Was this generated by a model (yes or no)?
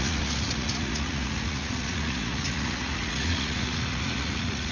yes